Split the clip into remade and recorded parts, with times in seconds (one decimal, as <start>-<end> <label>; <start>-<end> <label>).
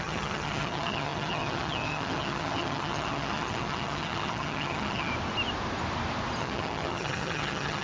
0.0-5.1 remade; 5.1-6.4 recorded; 6.4-7.8 remade